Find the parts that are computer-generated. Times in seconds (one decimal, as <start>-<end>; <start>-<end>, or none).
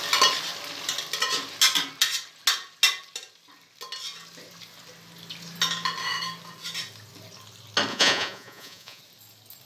7.9-9.0